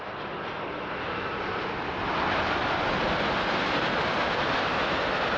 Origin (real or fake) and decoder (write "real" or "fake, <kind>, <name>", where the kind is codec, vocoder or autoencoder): real